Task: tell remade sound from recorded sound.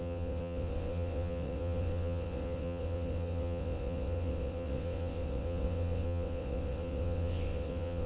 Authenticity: remade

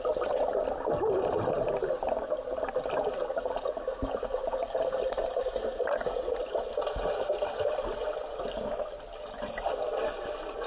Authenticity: recorded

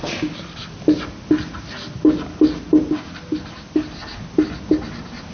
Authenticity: recorded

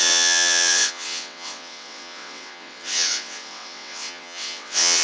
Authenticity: remade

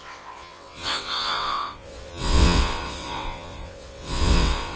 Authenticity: remade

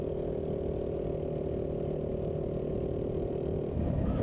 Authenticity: recorded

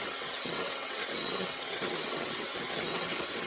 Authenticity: remade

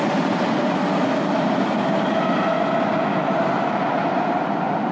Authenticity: recorded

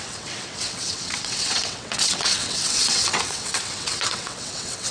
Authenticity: remade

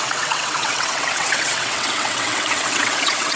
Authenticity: remade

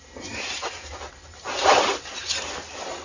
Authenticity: recorded